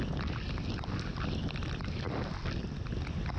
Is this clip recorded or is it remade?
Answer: recorded